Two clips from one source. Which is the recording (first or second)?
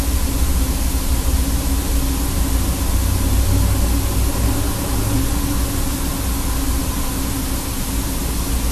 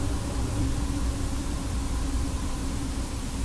first